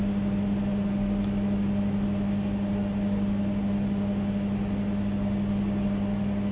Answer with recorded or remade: recorded